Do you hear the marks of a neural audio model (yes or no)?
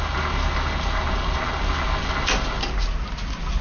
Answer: no